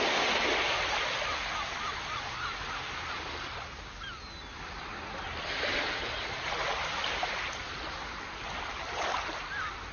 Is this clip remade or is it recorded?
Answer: recorded